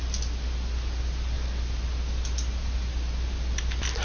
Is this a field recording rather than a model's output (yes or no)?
yes